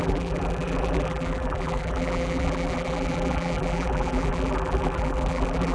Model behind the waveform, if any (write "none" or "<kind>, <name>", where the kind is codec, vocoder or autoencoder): vocoder, BigVGAN v2